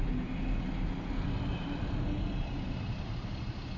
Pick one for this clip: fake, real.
real